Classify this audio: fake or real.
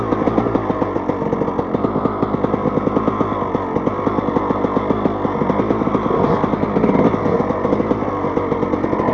real